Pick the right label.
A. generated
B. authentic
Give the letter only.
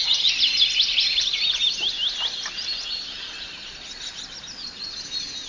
B